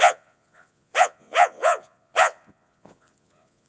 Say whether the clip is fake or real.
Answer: fake